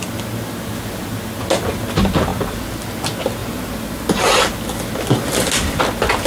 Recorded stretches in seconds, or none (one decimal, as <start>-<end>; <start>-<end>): 0.0-6.3